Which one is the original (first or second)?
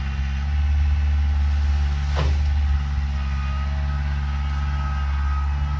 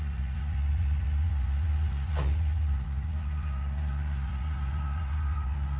first